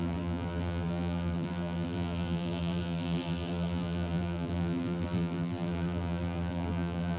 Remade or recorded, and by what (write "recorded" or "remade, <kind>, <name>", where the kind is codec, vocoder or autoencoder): remade, vocoder, BigVGAN v2